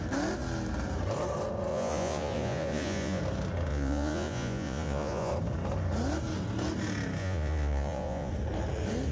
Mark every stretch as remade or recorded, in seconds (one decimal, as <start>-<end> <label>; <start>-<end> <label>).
0.0-1.7 recorded; 1.7-3.2 remade; 3.2-3.7 recorded; 3.7-5.3 remade; 5.3-7.2 recorded; 7.2-8.3 remade; 8.3-9.1 recorded